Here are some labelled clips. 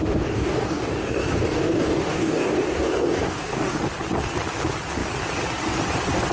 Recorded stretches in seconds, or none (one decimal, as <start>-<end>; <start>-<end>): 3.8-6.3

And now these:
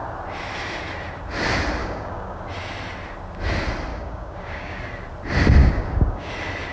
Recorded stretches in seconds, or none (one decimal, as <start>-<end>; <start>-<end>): 0.0-1.8; 2.4-3.9; 4.8-5.6; 6.3-6.7

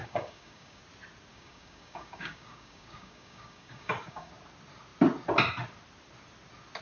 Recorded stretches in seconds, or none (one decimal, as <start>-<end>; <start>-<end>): 0.8-1.3; 4.3-6.8